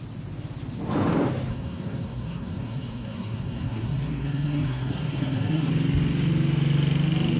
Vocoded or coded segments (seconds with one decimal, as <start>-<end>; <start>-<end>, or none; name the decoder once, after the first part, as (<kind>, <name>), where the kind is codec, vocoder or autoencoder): 1.5-5.7 (codec, SNAC)